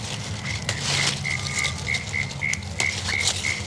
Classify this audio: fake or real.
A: real